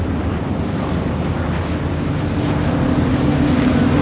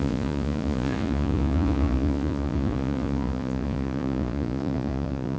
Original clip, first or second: first